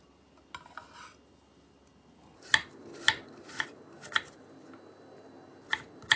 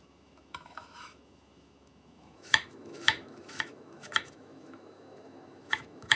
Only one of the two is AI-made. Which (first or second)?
second